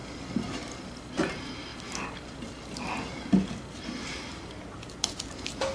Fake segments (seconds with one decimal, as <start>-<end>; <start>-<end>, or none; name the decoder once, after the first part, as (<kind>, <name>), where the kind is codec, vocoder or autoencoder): none